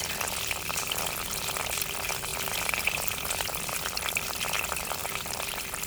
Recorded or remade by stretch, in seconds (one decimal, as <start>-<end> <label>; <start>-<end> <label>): 0.0-2.3 remade; 2.3-3.6 recorded; 3.6-5.9 remade